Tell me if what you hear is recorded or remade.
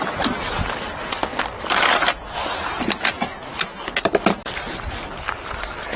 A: recorded